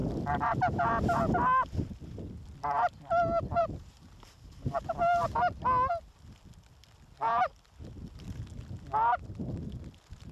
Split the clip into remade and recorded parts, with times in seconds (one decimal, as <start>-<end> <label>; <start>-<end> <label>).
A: 0.0-3.6 recorded; 3.6-4.8 remade; 4.8-10.3 recorded